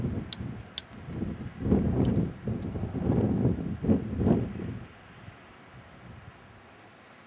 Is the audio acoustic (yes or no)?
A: yes